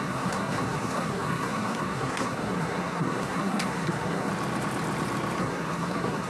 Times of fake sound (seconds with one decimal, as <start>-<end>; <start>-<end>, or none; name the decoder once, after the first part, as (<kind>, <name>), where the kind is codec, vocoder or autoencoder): 0.0-4.3 (codec, SNAC); 5.4-6.3